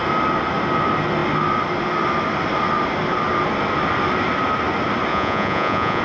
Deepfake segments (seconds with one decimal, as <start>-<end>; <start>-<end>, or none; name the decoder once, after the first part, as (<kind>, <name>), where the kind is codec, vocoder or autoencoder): 5.1-6.0 (vocoder, Vocos)